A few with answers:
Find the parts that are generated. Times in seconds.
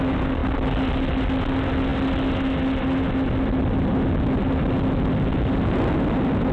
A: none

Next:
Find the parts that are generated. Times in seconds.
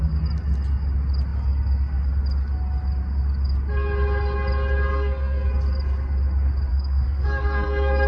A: 4.9-5.5 (codec, SNAC); 6.7-8.1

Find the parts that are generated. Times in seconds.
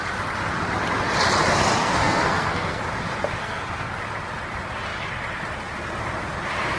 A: 1.8-2.8 (codec, SNAC); 3.4-3.9